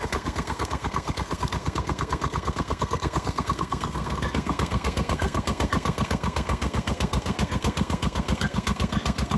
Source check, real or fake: fake